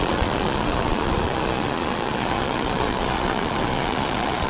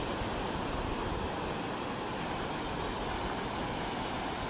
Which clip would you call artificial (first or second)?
first